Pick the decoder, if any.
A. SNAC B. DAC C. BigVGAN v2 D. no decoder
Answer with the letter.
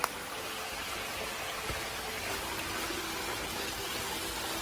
D